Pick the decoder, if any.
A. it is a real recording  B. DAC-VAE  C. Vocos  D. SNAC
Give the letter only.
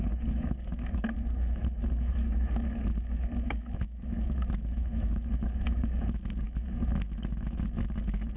B